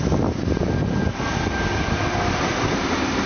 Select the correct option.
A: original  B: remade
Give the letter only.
A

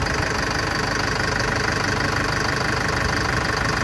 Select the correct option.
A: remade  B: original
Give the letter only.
B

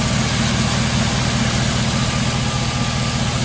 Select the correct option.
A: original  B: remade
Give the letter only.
A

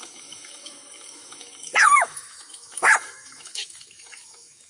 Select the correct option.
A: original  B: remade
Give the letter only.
B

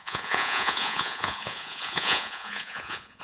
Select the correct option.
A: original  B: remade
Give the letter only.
B